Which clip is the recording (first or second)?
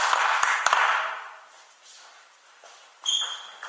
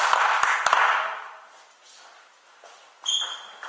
second